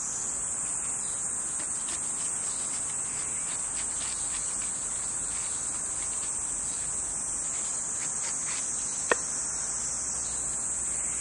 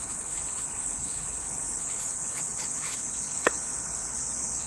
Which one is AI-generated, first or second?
second